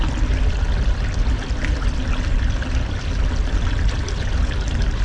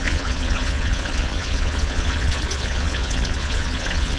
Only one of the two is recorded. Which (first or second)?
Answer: first